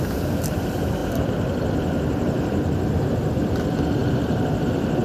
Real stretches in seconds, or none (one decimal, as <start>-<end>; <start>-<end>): 0.0-5.0